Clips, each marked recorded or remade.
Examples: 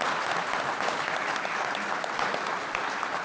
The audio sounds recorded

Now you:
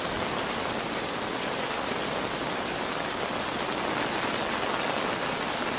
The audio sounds recorded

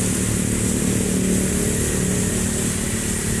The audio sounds recorded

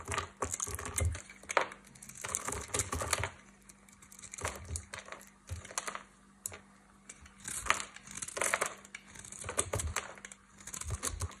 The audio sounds recorded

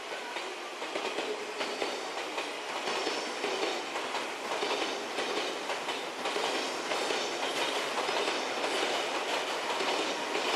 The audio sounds recorded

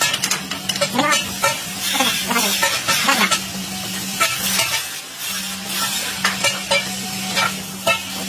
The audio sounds recorded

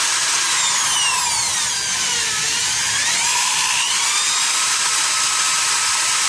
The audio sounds recorded